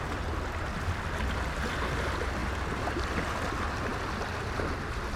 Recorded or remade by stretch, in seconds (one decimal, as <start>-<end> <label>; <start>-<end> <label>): 0.0-5.2 recorded